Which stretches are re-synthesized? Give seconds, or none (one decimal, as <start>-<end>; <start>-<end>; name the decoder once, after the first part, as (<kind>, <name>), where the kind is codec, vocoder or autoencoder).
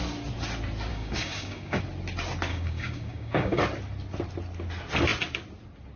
0.9-1.8 (codec, DAC); 2.5-3.6